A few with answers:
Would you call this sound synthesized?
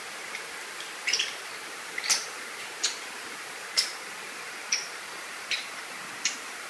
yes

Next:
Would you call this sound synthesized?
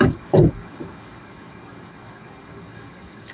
yes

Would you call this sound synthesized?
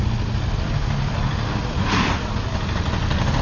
no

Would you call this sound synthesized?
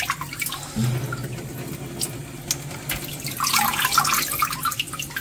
no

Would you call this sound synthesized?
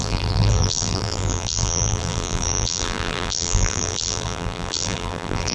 yes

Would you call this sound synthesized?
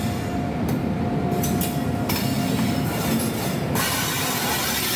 no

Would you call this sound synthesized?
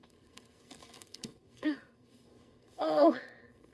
yes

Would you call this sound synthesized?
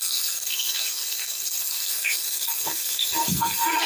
yes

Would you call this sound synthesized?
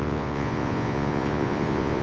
yes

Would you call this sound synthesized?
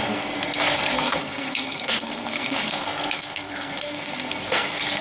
yes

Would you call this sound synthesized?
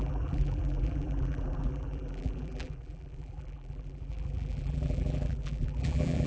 yes